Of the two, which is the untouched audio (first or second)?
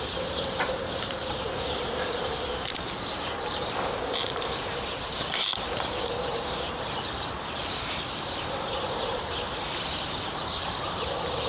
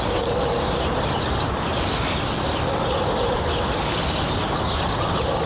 second